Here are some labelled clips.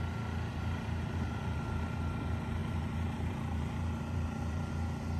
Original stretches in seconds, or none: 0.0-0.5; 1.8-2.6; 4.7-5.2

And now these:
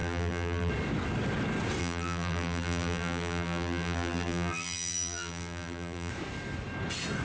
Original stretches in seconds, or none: 0.7-1.8; 6.1-7.2

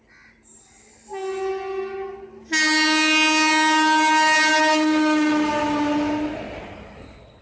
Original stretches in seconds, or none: 0.0-7.4